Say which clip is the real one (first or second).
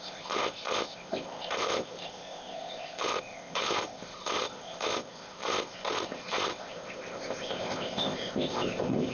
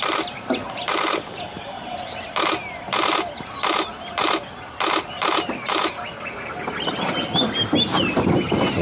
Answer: second